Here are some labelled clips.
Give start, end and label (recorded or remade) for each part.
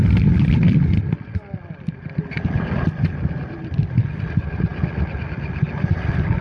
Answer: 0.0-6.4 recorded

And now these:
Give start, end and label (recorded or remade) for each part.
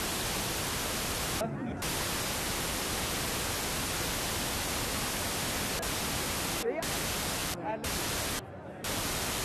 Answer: 0.0-7.4 recorded; 7.4-9.4 remade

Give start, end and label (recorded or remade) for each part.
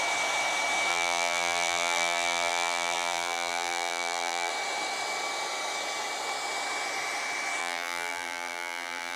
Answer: 0.0-0.9 recorded; 0.9-4.5 remade; 4.5-7.6 recorded; 7.6-9.2 remade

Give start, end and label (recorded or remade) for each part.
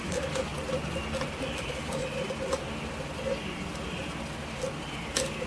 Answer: 0.0-0.5 remade; 0.5-1.6 recorded; 1.6-2.0 remade; 2.0-5.5 recorded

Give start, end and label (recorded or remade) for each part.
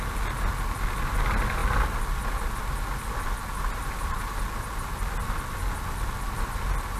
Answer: 0.0-3.8 recorded; 3.8-4.4 remade; 4.4-7.0 recorded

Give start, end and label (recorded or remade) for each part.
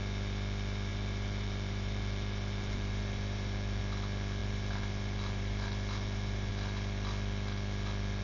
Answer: 0.0-0.9 recorded; 0.9-3.8 remade; 3.8-4.4 recorded; 4.4-6.5 remade; 6.5-8.2 recorded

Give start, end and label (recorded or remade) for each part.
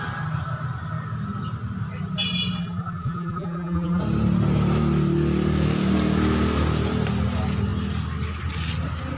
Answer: 0.0-2.6 recorded; 2.6-4.0 remade; 4.0-9.2 recorded